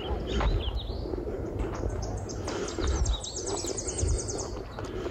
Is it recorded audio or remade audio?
recorded